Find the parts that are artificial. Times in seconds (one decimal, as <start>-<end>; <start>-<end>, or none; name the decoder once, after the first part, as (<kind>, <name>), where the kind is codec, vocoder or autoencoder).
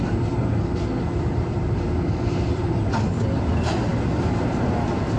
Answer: none